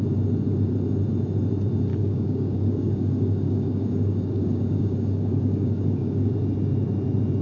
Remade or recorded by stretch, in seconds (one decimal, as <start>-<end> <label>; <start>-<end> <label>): 0.0-1.9 recorded; 1.9-6.3 remade; 6.3-7.4 recorded